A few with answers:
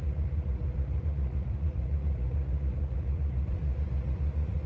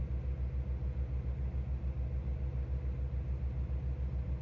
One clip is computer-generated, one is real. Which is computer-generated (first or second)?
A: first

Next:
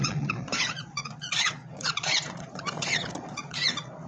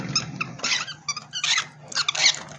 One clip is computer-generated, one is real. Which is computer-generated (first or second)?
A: first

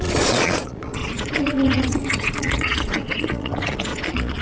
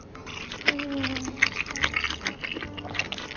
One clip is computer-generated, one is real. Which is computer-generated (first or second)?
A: first